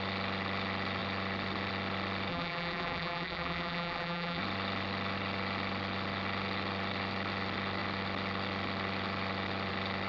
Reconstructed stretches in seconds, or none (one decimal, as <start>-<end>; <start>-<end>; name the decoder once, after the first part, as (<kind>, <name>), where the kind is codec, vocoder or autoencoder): 2.3-4.4 (vocoder, BigVGAN v2)